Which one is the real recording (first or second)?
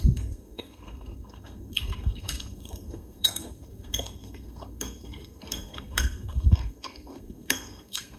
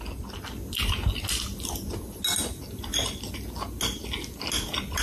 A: second